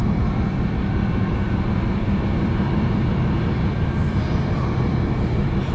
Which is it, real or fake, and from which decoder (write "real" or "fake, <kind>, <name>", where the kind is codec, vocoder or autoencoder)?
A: fake, vocoder, BigVGAN v2